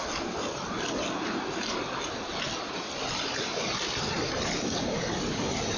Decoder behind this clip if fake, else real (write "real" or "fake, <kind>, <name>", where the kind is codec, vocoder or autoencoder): real